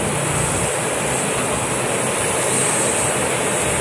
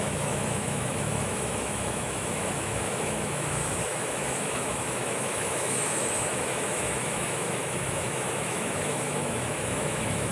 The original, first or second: first